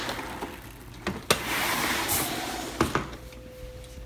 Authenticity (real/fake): real